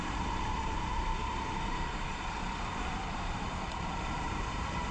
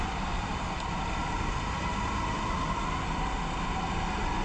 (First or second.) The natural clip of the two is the second